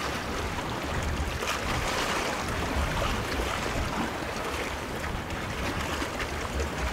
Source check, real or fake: real